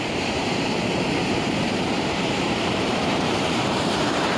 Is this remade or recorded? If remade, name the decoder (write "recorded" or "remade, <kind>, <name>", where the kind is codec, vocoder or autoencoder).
remade, vocoder, BigVGAN v2